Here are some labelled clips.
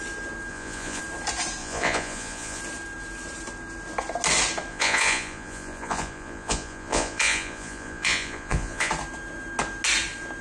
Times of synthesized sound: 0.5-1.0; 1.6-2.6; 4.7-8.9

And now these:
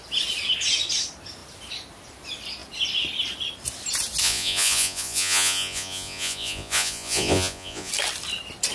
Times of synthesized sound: 4.2-7.9